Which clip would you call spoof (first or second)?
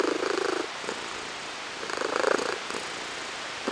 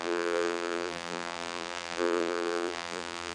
second